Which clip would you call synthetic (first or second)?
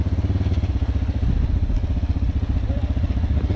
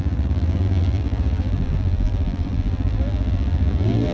second